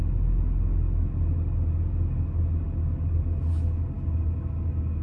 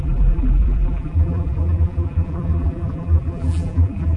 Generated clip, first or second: second